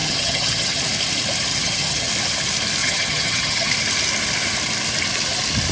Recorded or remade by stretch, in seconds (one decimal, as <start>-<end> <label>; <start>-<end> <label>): 0.0-0.8 remade; 0.8-1.5 recorded; 1.5-2.1 remade; 2.1-2.8 recorded; 2.8-3.7 remade; 3.7-5.7 recorded

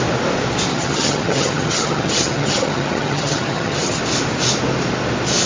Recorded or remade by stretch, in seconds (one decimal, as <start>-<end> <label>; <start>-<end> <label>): 0.0-0.7 recorded; 0.7-4.0 remade; 4.0-5.5 recorded

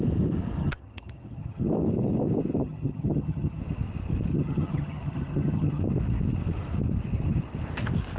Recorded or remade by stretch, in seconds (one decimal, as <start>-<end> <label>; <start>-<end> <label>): 0.0-0.6 recorded; 0.6-1.7 remade; 1.7-2.6 recorded; 2.6-3.6 remade; 3.6-4.3 recorded; 4.3-5.8 remade; 5.8-8.2 recorded

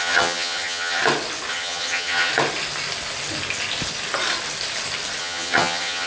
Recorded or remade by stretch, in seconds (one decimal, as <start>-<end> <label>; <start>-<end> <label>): 0.0-1.0 remade; 1.0-1.5 recorded; 1.5-2.3 remade; 2.3-5.2 recorded; 5.2-6.1 remade

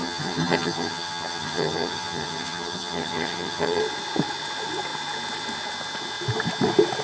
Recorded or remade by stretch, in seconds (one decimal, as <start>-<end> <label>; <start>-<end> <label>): 0.0-3.8 remade; 3.8-7.0 recorded

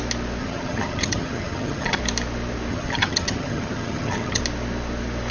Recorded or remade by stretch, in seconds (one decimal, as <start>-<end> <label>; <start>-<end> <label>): 0.0-0.4 recorded; 0.4-2.0 remade; 2.0-2.7 recorded; 2.7-4.4 remade; 4.4-5.3 recorded

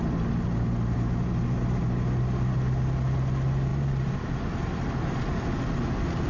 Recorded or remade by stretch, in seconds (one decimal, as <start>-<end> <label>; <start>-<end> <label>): 0.0-6.3 recorded

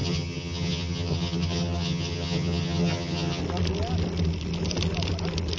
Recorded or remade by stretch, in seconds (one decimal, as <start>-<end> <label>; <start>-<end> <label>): 0.0-3.4 remade; 3.4-5.6 recorded